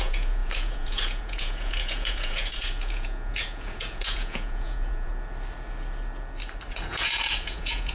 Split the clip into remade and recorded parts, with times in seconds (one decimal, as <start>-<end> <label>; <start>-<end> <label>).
0.0-5.1 remade; 5.1-6.7 recorded; 6.7-7.9 remade